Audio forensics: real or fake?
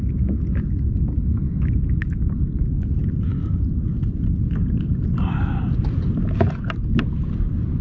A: real